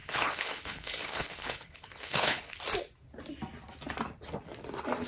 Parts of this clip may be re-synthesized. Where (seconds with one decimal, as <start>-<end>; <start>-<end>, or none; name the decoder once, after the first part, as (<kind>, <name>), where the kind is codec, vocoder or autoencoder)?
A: 0.0-2.6 (codec, HILCodec)